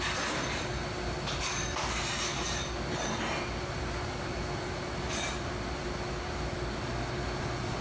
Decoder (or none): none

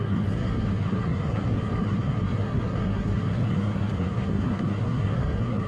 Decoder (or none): codec, SNAC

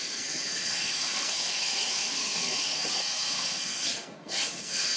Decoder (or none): codec, SNAC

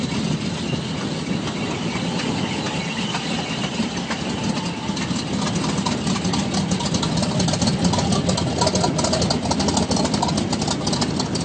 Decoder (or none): none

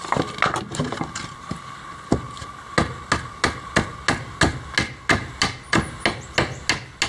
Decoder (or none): none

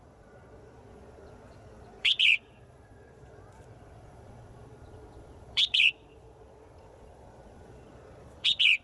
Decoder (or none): vocoder, Vocos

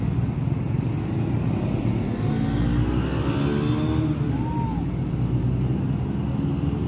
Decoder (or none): none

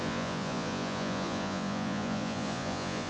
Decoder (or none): vocoder, Vocos